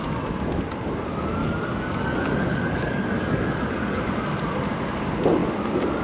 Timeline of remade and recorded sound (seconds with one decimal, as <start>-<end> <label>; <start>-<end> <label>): 0.0-1.4 recorded; 1.4-4.0 remade; 4.0-6.0 recorded